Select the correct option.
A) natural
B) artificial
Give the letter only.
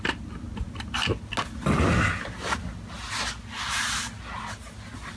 A